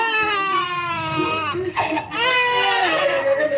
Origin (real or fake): fake